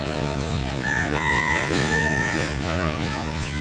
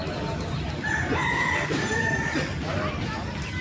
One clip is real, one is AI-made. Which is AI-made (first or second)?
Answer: first